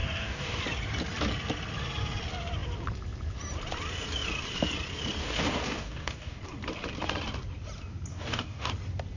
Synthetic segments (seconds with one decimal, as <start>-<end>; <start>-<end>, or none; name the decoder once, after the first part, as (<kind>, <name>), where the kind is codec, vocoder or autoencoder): 0.0-0.6 (codec, DAC); 5.2-6.4; 8.1-8.7